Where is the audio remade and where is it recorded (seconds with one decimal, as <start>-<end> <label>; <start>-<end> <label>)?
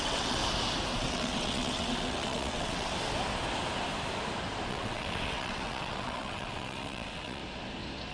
0.0-0.4 remade; 0.4-1.0 recorded; 1.0-2.9 remade; 2.9-4.7 recorded; 4.7-7.4 remade; 7.4-8.1 recorded